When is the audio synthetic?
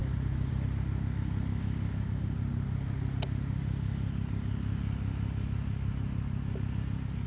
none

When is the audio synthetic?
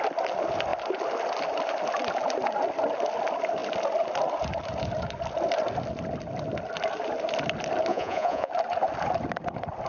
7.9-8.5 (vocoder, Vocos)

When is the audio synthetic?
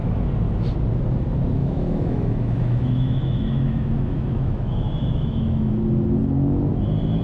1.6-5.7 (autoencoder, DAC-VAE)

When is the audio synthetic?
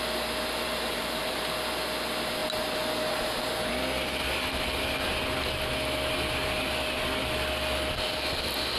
0.7-1.4 (vocoder, BigVGAN v2)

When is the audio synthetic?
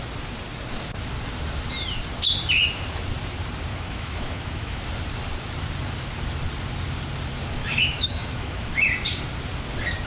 3.7-4.8 (autoencoder, DAC-VAE); 7.6-8.8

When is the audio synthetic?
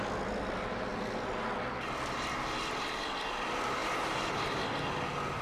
none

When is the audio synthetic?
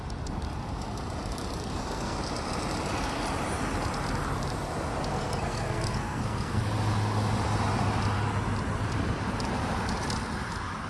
1.6-2.2 (codec, SNAC); 5.1-6.6